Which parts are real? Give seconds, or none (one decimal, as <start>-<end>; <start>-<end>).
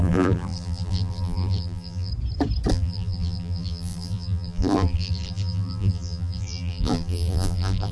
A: 2.1-2.7